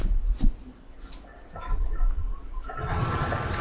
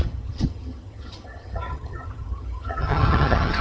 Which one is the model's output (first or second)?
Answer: second